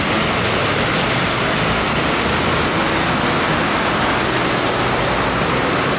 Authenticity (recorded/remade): recorded